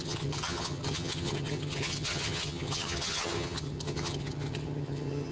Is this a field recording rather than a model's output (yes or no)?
no